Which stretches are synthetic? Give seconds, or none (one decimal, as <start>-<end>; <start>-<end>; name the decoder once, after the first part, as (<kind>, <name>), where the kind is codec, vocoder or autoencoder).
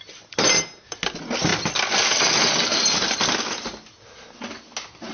none